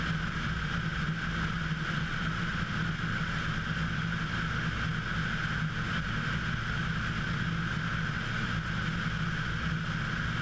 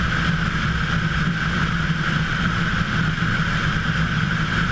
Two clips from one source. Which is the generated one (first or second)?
second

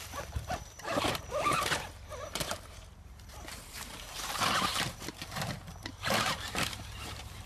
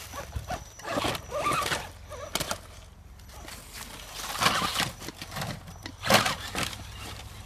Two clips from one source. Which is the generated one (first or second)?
first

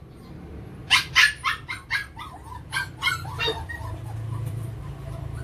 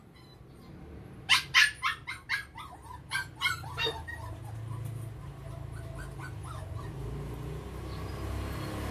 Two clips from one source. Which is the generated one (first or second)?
first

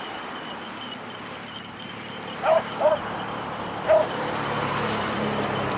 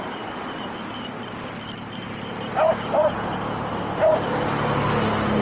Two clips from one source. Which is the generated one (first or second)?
first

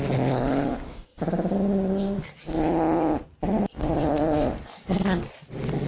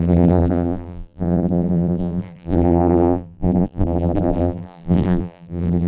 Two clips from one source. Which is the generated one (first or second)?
second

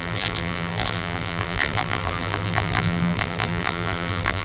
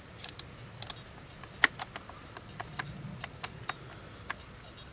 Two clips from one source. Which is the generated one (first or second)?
first